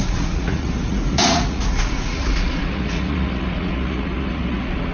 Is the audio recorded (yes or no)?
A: no